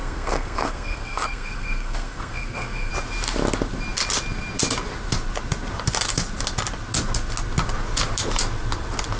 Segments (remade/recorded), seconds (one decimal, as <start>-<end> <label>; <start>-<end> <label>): 0.0-2.9 remade; 2.9-9.2 recorded